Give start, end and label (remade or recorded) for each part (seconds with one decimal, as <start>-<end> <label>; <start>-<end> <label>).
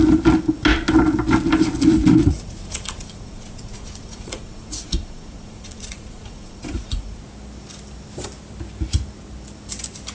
0.0-2.2 recorded; 2.2-7.2 remade; 7.2-10.1 recorded